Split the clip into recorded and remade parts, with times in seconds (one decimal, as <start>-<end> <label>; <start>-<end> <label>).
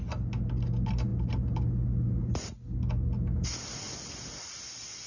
0.0-5.1 recorded